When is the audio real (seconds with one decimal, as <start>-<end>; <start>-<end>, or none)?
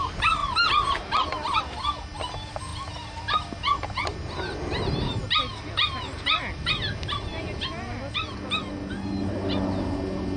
0.0-10.4